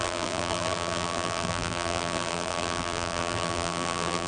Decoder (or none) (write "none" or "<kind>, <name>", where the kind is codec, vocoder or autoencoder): vocoder, BigVGAN v2